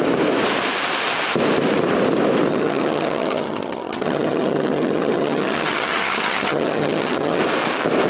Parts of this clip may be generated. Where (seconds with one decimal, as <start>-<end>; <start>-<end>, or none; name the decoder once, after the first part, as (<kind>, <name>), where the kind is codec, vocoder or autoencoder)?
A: 2.5-7.4 (vocoder, HiFi-GAN)